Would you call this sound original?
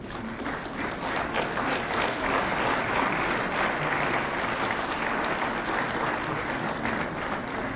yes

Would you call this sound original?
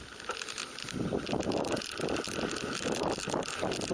yes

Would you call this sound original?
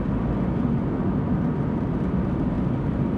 yes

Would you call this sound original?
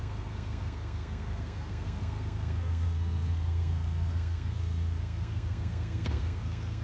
no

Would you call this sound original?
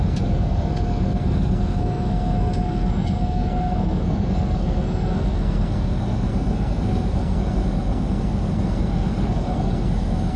no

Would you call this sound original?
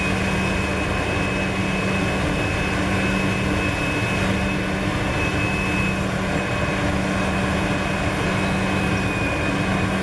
yes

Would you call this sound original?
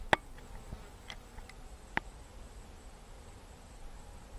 yes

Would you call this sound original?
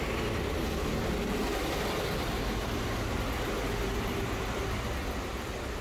yes